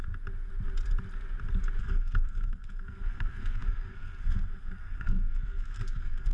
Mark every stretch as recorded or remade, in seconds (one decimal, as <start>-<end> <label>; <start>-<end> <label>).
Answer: 0.0-1.8 recorded; 1.8-6.3 remade